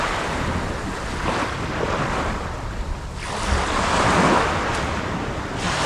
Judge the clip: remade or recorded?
recorded